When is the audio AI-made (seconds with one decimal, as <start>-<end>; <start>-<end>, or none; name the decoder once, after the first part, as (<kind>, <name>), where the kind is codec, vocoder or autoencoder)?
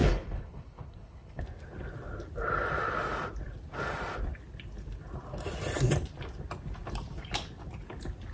0.0-1.4 (codec, HILCodec)